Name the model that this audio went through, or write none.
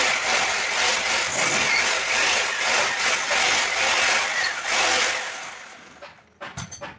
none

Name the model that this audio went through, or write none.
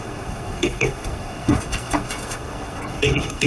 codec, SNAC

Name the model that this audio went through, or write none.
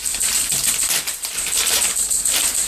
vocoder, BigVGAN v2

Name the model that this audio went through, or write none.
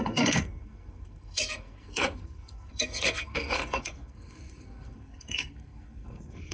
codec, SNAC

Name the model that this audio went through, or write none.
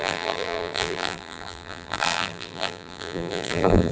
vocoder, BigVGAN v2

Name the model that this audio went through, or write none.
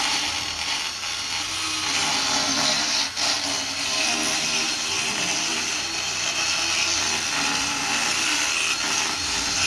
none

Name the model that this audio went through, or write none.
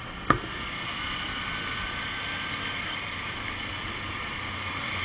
none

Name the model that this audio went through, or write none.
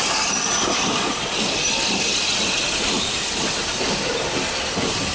none